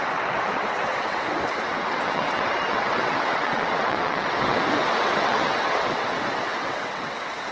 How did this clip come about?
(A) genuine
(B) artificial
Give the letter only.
B